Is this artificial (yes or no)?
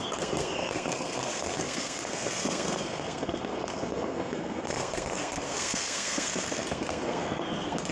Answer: yes